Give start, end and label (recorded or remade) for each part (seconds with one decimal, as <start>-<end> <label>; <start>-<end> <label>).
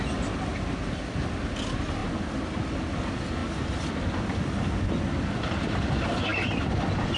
0.0-6.3 recorded; 6.3-7.2 remade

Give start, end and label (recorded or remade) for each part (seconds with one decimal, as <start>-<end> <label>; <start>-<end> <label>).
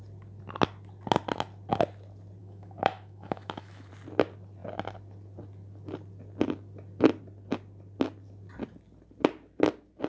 0.0-2.4 recorded; 2.4-3.9 remade; 3.9-10.1 recorded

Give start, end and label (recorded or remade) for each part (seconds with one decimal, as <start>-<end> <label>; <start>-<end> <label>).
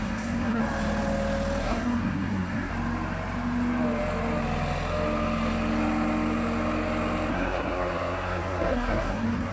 0.0-0.6 remade; 0.6-1.6 recorded; 1.6-2.7 remade; 2.7-7.3 recorded; 7.3-9.5 remade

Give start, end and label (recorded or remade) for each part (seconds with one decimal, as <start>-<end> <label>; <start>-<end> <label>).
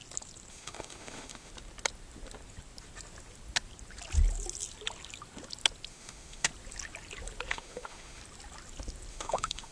0.0-0.5 recorded; 0.5-1.5 remade; 1.5-5.9 recorded; 5.9-6.5 remade; 6.5-7.5 recorded; 7.5-8.2 remade; 8.2-9.1 recorded; 9.1-9.7 remade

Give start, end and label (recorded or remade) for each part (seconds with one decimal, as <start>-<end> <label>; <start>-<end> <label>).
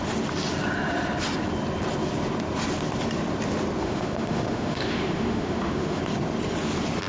0.0-3.8 recorded; 3.8-6.0 remade; 6.0-7.1 recorded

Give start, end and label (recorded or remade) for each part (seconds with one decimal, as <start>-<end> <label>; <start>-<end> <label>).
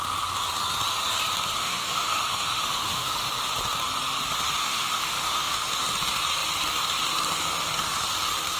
0.0-1.6 recorded; 1.6-3.3 remade; 3.3-4.6 recorded; 4.6-5.7 remade; 5.7-8.6 recorded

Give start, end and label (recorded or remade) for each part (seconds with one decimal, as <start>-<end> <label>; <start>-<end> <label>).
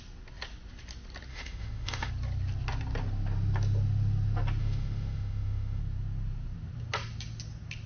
0.0-1.3 recorded; 1.3-2.1 remade; 2.1-4.6 recorded; 4.6-5.8 remade; 5.8-7.9 recorded